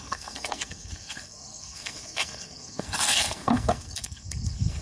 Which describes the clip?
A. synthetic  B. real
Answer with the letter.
A